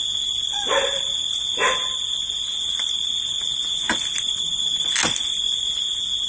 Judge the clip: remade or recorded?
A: recorded